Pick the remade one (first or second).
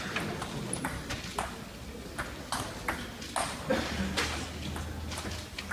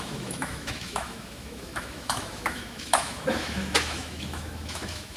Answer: second